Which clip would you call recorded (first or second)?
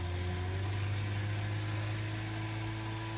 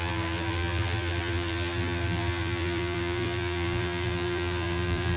first